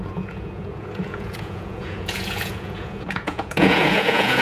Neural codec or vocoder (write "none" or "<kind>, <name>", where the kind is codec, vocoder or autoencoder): vocoder, Vocos